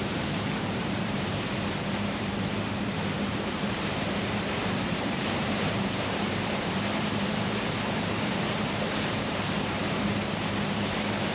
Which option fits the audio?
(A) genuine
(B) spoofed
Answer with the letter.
B